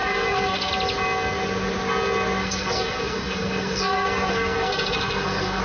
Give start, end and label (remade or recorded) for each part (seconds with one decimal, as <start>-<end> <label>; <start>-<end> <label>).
0.0-0.7 remade; 0.7-2.4 recorded; 2.4-5.6 remade